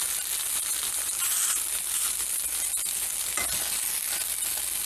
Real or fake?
real